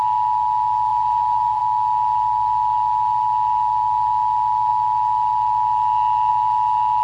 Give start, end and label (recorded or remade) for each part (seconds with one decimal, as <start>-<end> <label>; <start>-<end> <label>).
0.0-0.9 recorded; 0.9-1.6 remade; 1.6-7.0 recorded